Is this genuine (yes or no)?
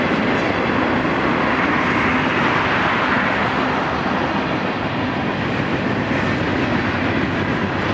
yes